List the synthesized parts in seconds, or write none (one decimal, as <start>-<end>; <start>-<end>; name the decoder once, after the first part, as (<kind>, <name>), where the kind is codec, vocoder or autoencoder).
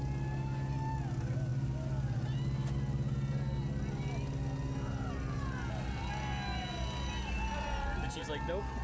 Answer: none